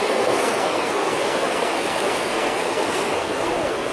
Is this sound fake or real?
fake